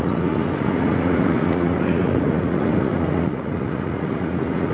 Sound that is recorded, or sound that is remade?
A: remade